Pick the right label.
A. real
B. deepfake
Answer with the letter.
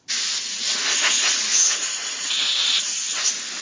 A